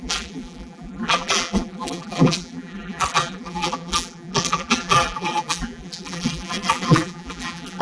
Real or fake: fake